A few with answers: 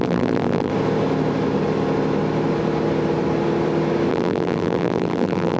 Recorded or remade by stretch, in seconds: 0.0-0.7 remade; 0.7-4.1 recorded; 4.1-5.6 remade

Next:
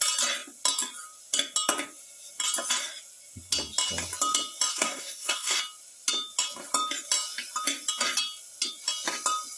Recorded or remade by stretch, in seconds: 0.0-4.7 recorded; 4.7-5.6 remade; 5.6-9.6 recorded

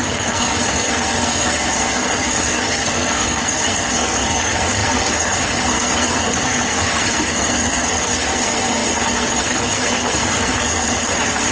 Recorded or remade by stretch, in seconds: 0.0-11.5 remade

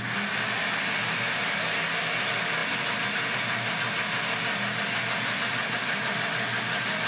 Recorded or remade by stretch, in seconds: 0.0-7.1 recorded